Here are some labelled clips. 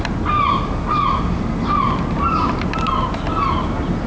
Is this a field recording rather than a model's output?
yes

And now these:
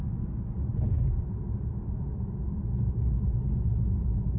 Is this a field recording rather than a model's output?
yes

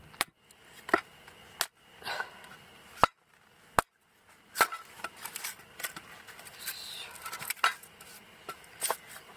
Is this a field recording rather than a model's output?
yes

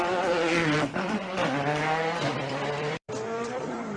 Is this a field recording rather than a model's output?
no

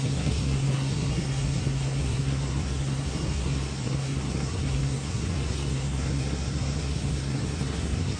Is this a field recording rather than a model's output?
no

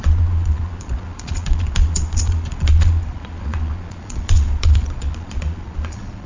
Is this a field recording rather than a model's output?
no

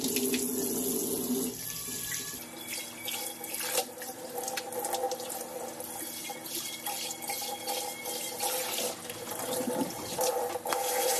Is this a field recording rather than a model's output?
yes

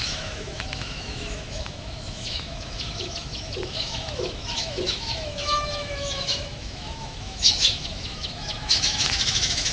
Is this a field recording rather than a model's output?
no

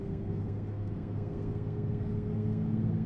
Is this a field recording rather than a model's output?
no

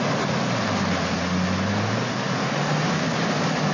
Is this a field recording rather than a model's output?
yes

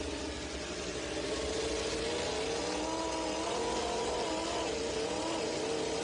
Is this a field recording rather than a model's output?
yes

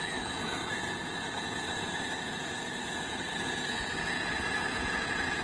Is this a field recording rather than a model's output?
no